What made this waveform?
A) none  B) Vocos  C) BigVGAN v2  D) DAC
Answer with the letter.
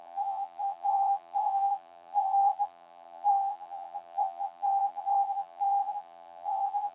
C